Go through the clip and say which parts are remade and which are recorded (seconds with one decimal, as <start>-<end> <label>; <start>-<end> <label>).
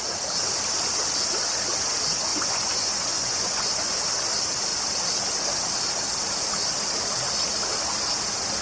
0.0-2.3 recorded; 2.3-4.0 remade; 4.0-8.6 recorded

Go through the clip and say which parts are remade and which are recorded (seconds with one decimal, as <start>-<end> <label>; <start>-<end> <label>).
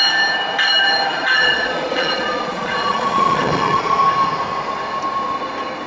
0.0-1.1 recorded; 1.1-4.0 remade; 4.0-5.9 recorded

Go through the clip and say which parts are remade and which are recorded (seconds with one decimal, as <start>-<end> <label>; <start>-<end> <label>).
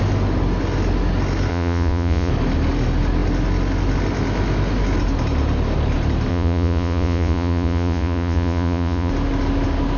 0.0-1.5 recorded; 1.5-2.3 remade; 2.3-6.3 recorded; 6.3-9.1 remade; 9.1-10.0 recorded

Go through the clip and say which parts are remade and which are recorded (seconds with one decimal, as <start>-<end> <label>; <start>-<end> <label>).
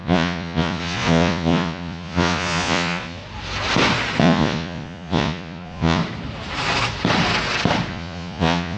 0.0-3.2 remade; 3.2-4.2 recorded; 4.2-6.0 remade; 6.0-7.9 recorded; 7.9-8.8 remade